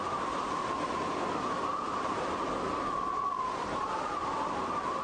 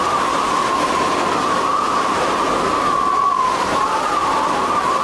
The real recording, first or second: second